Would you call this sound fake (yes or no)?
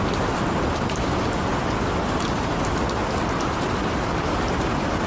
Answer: no